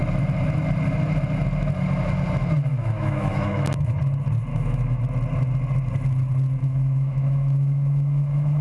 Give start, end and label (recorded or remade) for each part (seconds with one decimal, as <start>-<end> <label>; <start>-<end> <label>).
0.0-2.7 recorded; 2.7-4.0 remade; 4.0-4.5 recorded; 4.5-5.0 remade; 5.0-6.6 recorded; 6.6-8.6 remade